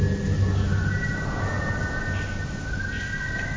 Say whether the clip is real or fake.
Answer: real